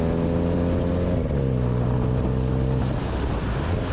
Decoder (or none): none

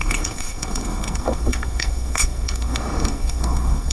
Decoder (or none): codec, SNAC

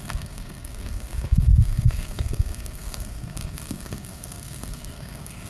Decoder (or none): codec, SNAC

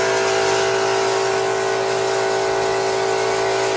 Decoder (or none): none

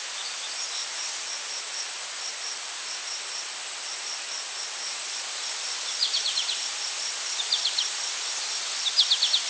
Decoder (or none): none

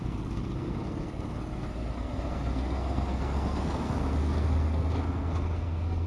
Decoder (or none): codec, SNAC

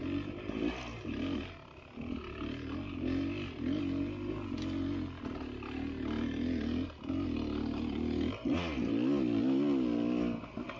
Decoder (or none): none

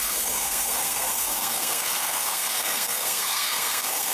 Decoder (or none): codec, SNAC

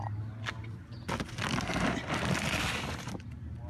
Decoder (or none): none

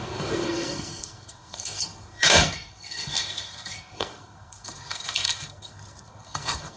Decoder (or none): codec, SNAC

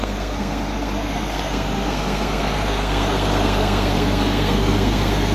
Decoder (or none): codec, SNAC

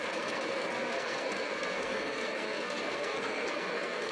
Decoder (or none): codec, SNAC